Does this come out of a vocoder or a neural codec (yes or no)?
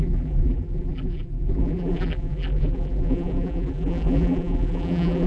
yes